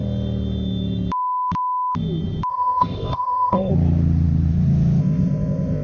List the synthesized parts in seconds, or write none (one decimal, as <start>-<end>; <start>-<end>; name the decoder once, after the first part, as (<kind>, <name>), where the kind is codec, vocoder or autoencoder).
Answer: 2.5-3.7 (codec, ZipCodec); 5.0-5.8